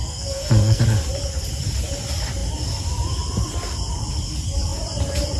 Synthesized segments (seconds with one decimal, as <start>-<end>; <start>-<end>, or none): 0.0-0.8